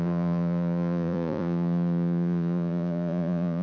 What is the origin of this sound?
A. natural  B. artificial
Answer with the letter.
B